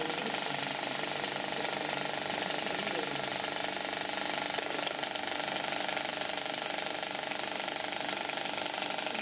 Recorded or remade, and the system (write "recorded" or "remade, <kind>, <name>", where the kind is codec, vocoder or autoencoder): recorded